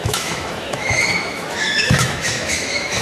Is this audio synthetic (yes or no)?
yes